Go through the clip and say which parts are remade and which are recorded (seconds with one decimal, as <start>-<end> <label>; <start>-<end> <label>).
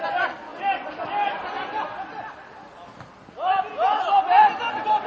0.0-5.1 recorded